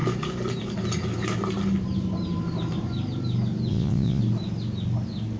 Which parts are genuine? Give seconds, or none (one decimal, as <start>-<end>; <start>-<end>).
0.0-3.7; 4.2-5.4